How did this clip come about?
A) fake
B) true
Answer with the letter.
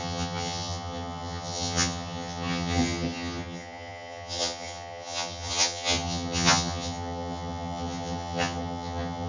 A